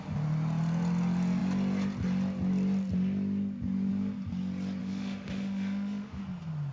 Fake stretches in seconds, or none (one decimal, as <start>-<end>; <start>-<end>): 4.8-6.2